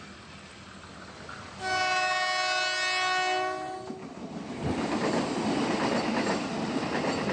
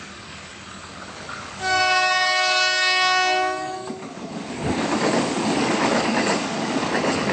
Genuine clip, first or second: first